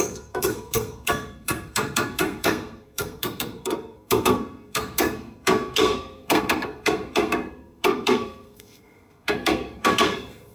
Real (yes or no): no